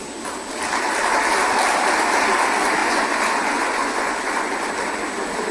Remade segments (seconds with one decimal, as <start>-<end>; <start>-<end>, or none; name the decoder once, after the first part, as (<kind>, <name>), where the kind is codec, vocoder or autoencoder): 2.8-4.7 (vocoder, Vocos)